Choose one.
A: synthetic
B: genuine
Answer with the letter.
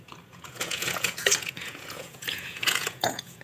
A